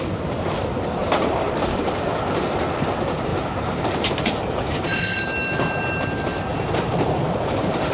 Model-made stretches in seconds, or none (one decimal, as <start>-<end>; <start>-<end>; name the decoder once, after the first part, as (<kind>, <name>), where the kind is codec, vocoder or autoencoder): 1.0-1.8 (vocoder, BigVGAN v2); 3.3-5.0; 6.5-7.9